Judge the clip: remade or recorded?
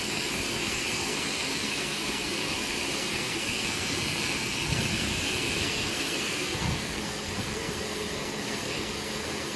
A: remade